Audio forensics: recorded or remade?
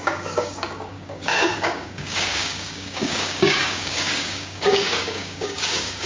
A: remade